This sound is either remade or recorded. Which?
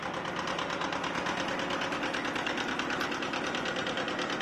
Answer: recorded